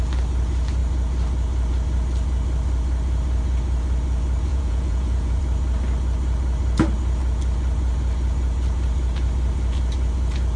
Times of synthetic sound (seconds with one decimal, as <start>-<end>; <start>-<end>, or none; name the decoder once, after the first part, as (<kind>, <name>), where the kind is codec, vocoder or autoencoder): 4.5-5.4 (vocoder, Vocos)